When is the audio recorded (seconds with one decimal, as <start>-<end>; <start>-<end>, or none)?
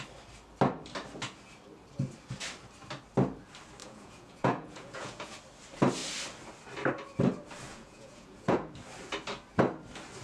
0.0-3.8; 5.4-7.7; 8.7-10.2